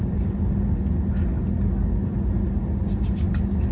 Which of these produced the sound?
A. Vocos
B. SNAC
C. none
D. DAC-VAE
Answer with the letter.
C